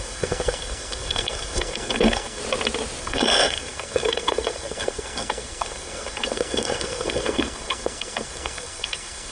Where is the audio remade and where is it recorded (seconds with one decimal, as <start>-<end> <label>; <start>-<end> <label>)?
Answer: 0.0-2.4 remade; 2.4-3.0 recorded; 3.0-9.3 remade